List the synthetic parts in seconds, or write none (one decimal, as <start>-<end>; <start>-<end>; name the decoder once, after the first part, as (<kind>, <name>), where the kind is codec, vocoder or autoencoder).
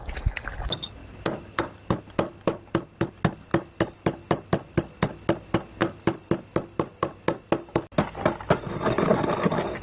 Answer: none